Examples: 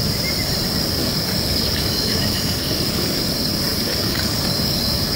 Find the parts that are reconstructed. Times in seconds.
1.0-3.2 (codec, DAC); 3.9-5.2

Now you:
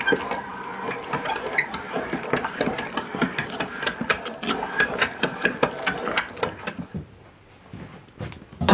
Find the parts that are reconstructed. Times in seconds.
none

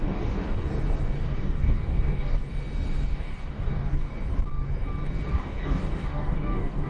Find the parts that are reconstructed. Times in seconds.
0.0-0.7 (codec, DAC); 1.2-2.5; 3.1-4.1; 5.3-6.9